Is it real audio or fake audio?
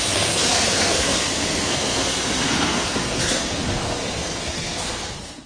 fake